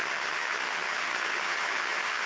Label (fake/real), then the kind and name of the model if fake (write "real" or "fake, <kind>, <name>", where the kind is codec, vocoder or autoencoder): fake, vocoder, HiFi-GAN